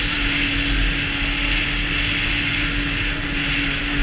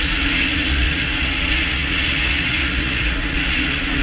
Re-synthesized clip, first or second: second